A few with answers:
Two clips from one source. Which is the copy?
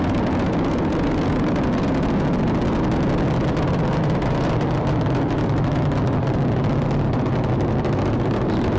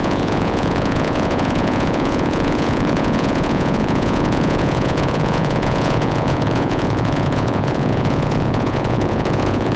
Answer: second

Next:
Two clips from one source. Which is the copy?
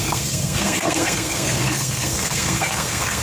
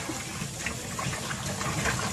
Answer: first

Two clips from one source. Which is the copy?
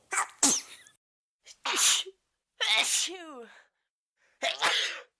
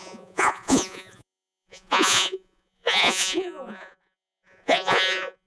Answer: second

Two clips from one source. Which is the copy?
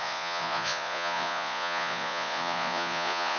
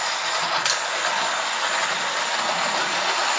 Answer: first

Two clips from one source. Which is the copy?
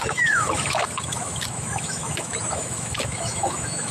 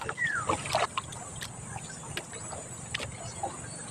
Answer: first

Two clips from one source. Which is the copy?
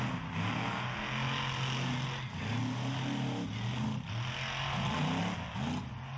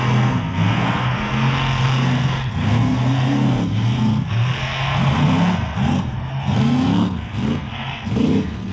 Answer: second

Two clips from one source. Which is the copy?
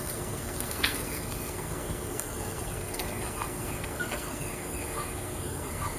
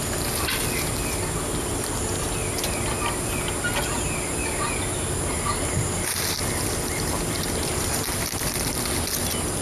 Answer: first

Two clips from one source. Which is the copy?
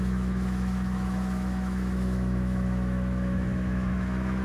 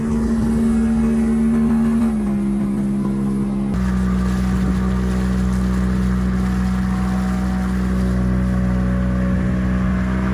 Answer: first